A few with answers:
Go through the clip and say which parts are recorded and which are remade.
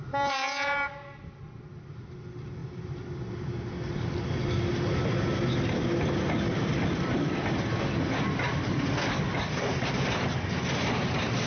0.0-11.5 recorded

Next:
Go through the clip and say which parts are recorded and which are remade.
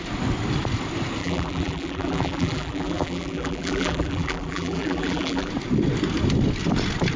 0.0-1.2 recorded; 1.2-5.5 remade; 5.5-7.2 recorded